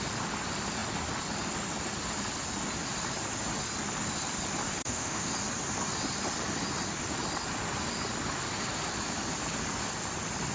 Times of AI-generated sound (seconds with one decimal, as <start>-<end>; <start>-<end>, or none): 4.8-5.3

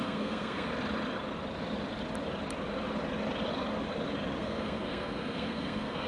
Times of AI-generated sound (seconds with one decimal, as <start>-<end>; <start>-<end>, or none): 0.0-0.7; 4.4-6.1